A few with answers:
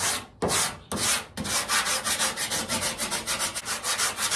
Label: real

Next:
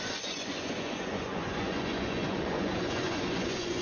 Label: fake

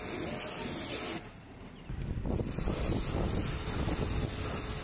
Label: real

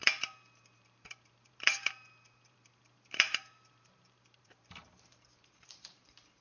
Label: fake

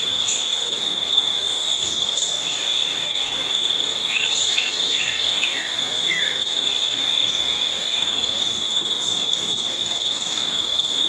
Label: fake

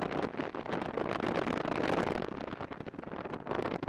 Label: real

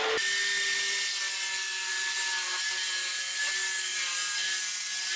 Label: real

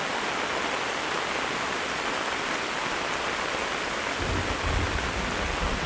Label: real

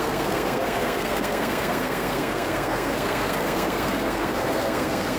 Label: fake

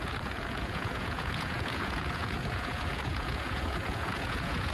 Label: fake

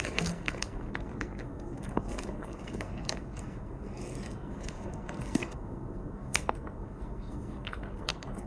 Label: fake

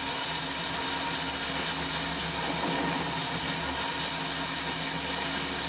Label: real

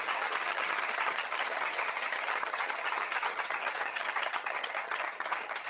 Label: fake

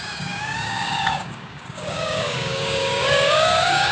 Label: fake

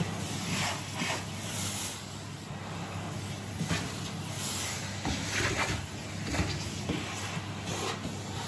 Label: real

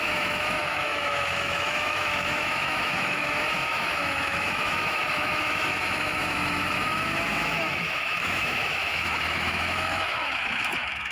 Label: fake